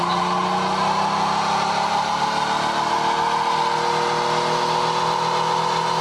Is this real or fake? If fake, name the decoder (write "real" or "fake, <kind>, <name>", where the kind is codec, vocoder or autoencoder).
real